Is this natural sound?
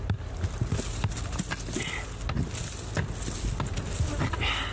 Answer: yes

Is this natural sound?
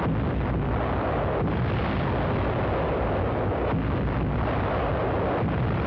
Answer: yes